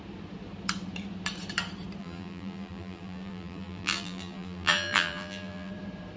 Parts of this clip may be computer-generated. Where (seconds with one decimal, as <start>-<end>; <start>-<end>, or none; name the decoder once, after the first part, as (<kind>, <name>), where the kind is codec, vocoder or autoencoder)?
2.0-5.7 (vocoder, BigVGAN v2)